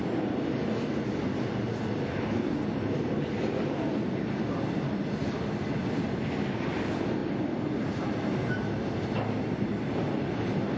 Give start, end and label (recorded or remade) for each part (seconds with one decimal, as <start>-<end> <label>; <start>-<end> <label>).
0.0-10.8 recorded